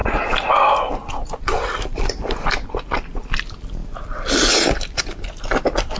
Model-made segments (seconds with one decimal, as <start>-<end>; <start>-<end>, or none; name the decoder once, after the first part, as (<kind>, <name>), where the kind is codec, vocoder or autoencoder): none